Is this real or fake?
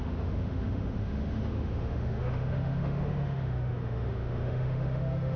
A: fake